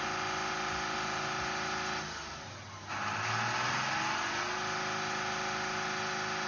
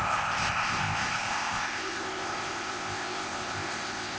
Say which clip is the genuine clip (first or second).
first